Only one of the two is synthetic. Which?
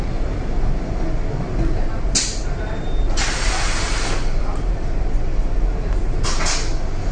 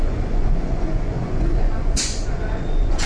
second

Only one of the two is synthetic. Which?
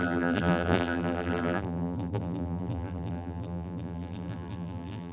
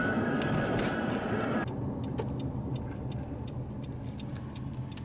first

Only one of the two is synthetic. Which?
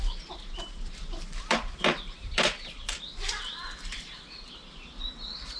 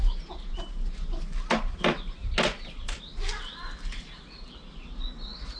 first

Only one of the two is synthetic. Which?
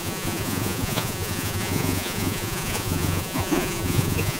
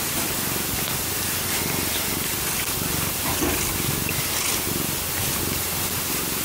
first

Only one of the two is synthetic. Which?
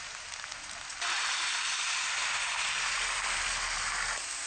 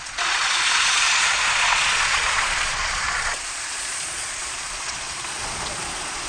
second